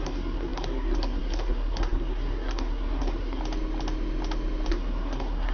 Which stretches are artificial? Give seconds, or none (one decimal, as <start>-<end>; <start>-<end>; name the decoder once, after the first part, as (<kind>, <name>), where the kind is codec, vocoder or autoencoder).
0.0-3.4 (codec, SNAC); 4.7-5.5